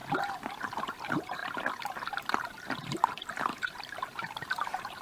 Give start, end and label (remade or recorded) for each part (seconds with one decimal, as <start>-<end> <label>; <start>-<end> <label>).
0.0-0.9 recorded; 0.9-1.4 remade; 1.4-3.1 recorded; 3.1-5.0 remade

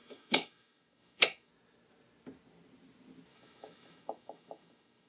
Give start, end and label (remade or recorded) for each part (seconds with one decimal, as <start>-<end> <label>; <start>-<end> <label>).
0.0-1.5 remade; 1.5-3.3 recorded; 3.3-5.1 remade

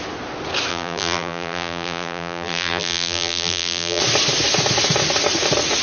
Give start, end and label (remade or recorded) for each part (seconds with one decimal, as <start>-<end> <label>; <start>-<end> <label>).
0.0-0.7 recorded; 0.7-4.0 remade; 4.0-5.8 recorded

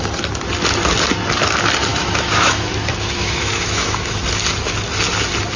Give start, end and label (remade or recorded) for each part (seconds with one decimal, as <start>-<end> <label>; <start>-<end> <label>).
0.0-1.9 recorded; 1.9-4.2 remade; 4.2-5.6 recorded

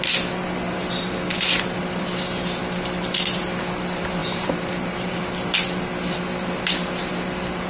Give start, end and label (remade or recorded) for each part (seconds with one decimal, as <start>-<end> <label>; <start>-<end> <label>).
0.0-4.2 recorded; 4.2-5.2 remade; 5.2-7.7 recorded

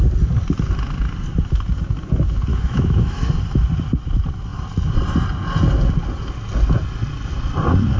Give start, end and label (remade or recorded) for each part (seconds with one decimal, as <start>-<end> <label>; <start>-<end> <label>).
0.0-2.5 recorded; 2.5-3.3 remade; 3.3-8.0 recorded

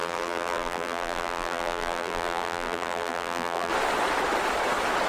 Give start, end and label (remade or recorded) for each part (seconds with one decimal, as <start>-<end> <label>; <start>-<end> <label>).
0.0-3.7 remade; 3.7-5.1 recorded

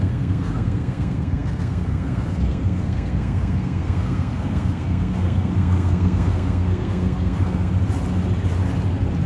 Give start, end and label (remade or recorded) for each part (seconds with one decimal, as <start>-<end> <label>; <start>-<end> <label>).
0.0-7.7 remade; 7.7-9.3 recorded